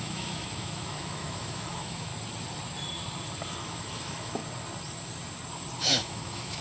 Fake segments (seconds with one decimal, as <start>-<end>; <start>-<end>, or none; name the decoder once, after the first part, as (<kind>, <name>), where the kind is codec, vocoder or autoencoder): 0.0-2.1 (autoencoder, DAC-VAE); 3.6-4.4; 5.8-6.6